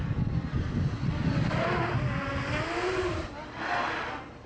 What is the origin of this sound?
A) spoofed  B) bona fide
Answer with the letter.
B